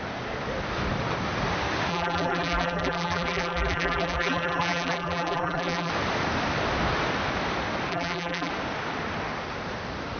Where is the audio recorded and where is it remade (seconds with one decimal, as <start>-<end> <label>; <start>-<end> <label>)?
0.0-1.9 recorded; 1.9-5.9 remade; 5.9-7.9 recorded; 7.9-8.5 remade; 8.5-10.2 recorded